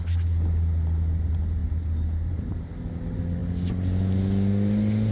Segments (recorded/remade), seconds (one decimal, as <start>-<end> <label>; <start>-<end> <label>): 0.0-5.1 recorded